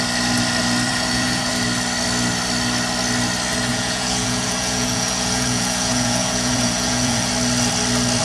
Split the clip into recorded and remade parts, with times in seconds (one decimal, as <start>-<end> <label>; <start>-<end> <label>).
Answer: 0.0-0.9 recorded; 0.9-1.5 remade; 1.5-3.7 recorded; 3.7-7.3 remade; 7.3-8.2 recorded